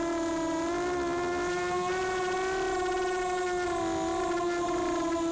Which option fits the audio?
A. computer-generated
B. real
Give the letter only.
B